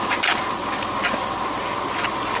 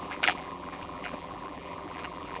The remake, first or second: second